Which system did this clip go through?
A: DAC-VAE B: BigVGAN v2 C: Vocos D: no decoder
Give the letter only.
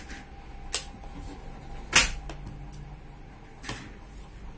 D